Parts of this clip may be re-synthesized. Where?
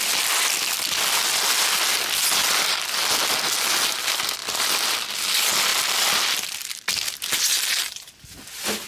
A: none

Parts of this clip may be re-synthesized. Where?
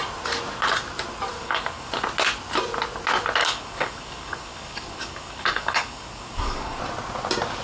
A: 1.4-1.9 (codec, DAC); 3.4-6.8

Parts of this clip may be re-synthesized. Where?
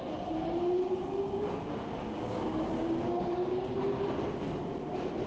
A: 1.1-3.5 (codec, DAC)